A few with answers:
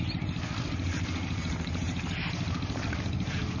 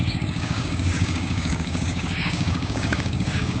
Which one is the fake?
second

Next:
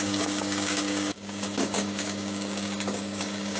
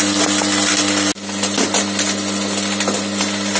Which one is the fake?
first